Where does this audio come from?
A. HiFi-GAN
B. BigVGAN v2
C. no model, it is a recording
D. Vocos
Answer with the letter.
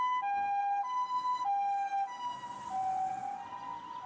C